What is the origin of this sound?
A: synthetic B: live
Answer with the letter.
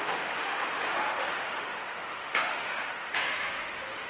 A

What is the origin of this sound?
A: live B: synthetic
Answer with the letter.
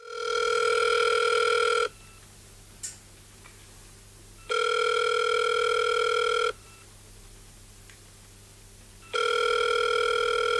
A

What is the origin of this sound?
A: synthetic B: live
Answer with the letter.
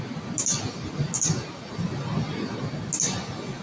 B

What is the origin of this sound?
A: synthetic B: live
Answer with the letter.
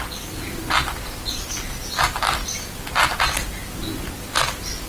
B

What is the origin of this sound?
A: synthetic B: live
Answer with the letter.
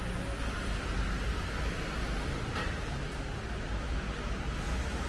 B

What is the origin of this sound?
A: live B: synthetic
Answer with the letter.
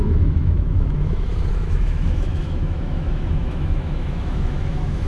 B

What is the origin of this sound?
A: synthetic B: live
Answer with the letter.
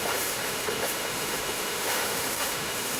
A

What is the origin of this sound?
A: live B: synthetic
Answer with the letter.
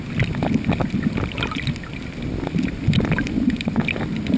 A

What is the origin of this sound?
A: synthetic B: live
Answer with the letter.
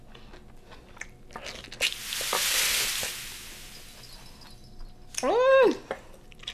B